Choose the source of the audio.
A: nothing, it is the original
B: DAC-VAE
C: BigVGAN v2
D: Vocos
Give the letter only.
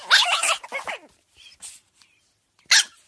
A